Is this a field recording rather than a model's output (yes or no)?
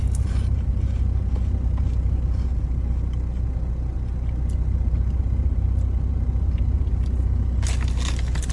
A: yes